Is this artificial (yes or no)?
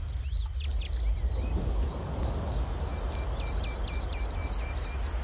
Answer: no